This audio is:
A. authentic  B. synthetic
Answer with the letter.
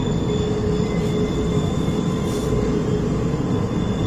A